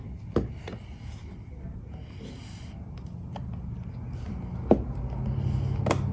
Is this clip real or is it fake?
real